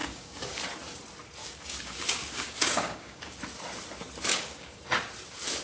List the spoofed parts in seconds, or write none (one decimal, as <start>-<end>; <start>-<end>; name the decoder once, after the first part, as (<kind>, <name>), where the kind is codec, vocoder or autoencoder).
0.0-0.6 (codec, DAC); 1.4-3.4; 4.3-4.8